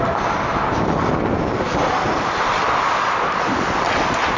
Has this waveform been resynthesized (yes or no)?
no